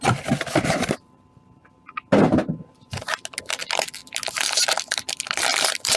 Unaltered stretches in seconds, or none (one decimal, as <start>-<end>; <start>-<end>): 1.6-3.4; 4.0-4.8